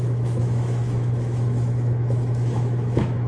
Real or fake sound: fake